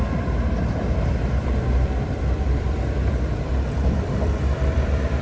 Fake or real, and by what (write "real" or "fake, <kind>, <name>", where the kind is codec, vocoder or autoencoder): fake, vocoder, BigVGAN v2